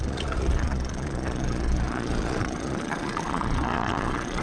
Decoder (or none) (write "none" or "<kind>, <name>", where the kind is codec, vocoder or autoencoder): vocoder, Vocos